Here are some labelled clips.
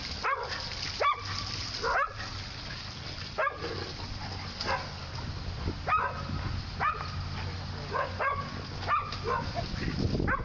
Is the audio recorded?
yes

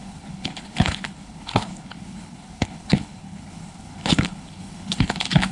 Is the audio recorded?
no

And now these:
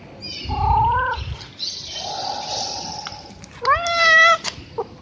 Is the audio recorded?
yes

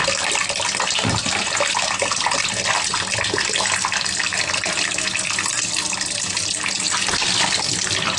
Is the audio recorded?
yes